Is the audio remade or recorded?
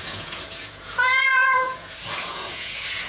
remade